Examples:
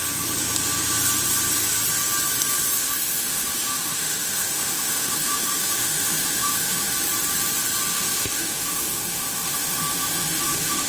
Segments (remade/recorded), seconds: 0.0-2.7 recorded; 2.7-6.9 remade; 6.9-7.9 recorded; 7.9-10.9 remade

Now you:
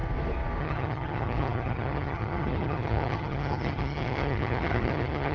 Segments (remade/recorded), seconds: 0.0-0.6 recorded; 0.6-5.3 remade

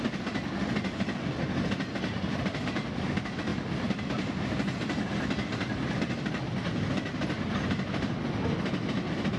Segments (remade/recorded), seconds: 0.0-9.4 recorded

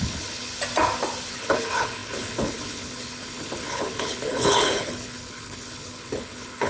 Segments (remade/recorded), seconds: 0.0-0.5 remade; 0.5-1.3 recorded; 1.3-6.7 remade